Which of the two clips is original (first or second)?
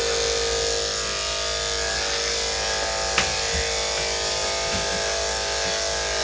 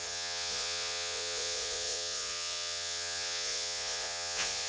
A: first